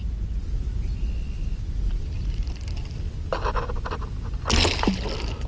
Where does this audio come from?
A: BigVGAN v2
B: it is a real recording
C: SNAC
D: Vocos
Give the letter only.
B